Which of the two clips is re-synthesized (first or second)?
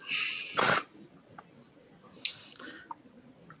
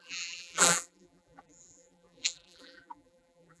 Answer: second